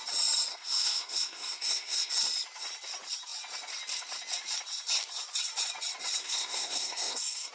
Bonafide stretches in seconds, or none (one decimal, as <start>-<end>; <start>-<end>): 0.0-0.5; 2.1-6.2